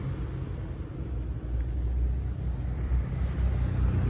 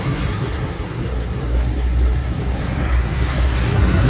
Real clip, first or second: first